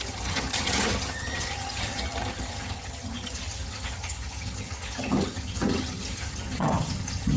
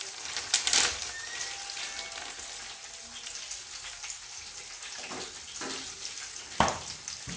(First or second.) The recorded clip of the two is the second